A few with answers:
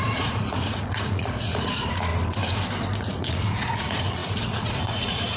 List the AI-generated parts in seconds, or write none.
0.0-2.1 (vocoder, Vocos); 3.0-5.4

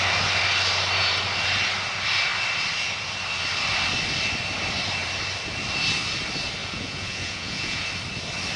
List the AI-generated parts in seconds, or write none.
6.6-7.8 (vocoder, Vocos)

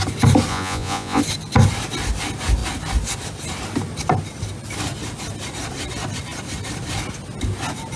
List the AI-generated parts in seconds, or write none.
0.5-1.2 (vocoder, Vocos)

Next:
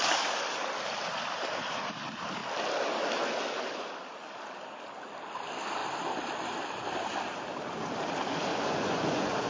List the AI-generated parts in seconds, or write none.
8.5-9.5 (vocoder, Vocos)

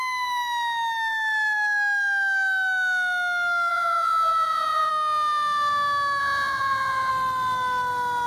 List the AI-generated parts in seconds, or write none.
3.7-4.9 (vocoder, Vocos); 6.2-7.1